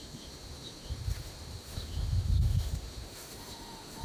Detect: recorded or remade remade